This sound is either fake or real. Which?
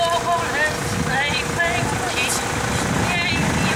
real